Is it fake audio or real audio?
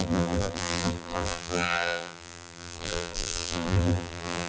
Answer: fake